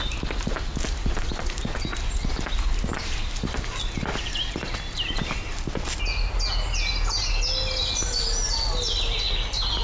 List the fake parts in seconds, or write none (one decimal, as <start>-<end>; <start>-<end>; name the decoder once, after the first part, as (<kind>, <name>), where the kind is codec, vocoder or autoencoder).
none